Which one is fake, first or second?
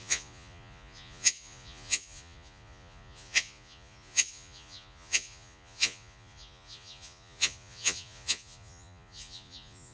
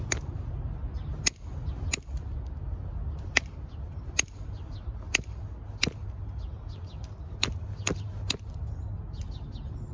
first